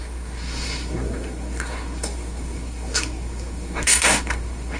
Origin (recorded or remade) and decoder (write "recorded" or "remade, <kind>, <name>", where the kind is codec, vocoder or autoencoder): remade, codec, SNAC